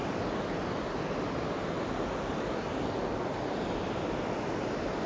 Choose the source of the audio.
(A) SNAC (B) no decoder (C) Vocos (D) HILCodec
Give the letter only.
B